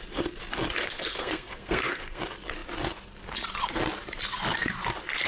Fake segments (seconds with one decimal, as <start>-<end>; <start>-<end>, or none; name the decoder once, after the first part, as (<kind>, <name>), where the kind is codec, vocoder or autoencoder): 0.8-2.2 (codec, SNAC)